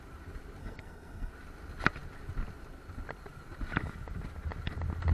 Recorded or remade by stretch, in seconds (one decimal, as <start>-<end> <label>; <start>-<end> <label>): 0.0-0.6 recorded; 0.6-1.3 remade; 1.3-5.1 recorded